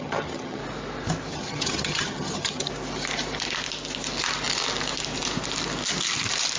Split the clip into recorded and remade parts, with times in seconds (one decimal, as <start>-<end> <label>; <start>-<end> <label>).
0.0-0.6 remade; 0.6-1.3 recorded; 1.3-2.7 remade; 2.7-6.6 recorded